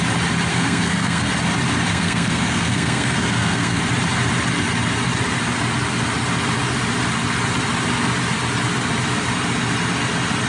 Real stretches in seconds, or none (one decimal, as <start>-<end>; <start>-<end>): 0.0-0.5; 1.3-1.9; 3.8-10.5